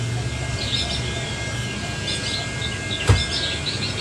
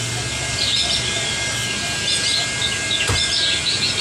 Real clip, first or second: first